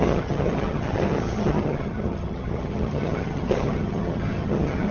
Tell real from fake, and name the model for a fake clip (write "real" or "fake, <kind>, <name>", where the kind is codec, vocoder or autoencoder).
fake, vocoder, HiFi-GAN